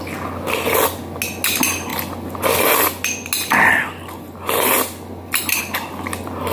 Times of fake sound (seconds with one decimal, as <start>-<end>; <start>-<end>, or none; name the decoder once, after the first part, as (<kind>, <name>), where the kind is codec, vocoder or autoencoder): none